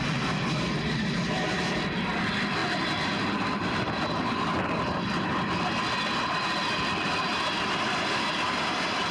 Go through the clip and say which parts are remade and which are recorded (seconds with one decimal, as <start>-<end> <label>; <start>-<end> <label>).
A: 0.0-9.1 recorded